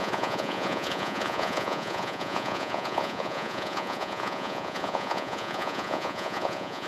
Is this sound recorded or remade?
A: remade